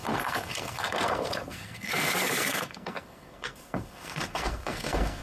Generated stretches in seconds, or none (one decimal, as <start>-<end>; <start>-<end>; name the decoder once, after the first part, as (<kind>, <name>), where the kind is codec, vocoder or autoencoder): 0.0-5.2 (codec, SNAC)